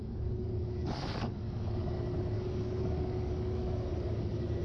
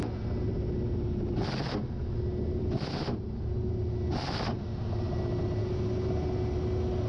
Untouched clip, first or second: second